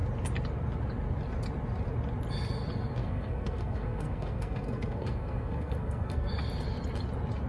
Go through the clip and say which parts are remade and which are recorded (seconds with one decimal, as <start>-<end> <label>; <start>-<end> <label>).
0.0-3.0 recorded; 3.0-6.3 remade; 6.3-7.5 recorded